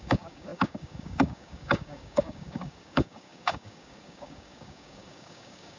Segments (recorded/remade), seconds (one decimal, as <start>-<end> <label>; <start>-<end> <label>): 0.0-5.8 remade